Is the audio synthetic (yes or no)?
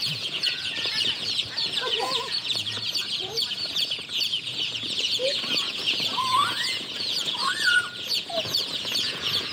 yes